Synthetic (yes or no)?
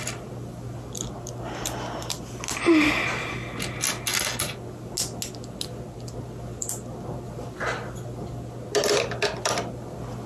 no